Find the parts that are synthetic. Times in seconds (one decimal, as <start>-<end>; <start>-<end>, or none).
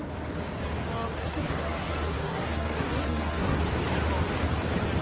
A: 1.2-3.6